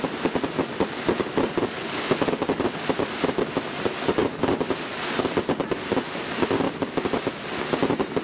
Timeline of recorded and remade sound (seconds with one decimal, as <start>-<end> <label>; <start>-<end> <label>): 0.0-8.2 recorded